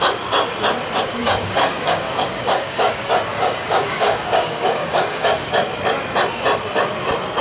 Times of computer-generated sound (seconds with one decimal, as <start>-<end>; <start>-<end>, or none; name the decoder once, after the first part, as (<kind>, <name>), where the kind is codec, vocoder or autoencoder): 1.1-2.9 (codec, DAC); 3.3-5.5